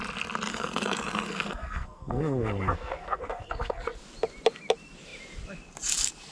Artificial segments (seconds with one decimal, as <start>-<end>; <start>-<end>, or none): 0.5-4.0